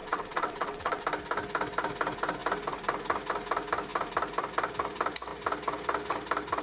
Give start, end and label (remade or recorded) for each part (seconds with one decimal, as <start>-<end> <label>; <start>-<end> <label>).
0.0-1.0 remade; 1.0-6.6 recorded